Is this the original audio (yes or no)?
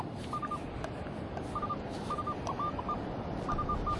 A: yes